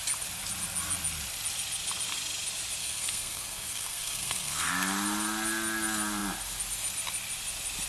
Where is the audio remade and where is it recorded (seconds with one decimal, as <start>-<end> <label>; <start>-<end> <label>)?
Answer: 0.0-2.8 recorded; 2.8-4.7 remade; 4.7-7.9 recorded